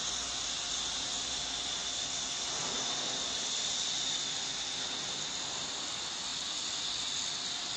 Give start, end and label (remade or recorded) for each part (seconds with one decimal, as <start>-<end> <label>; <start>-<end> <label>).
0.0-7.8 recorded